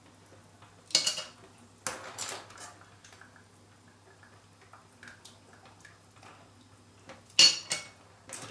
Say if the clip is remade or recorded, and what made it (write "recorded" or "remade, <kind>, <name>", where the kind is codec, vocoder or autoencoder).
recorded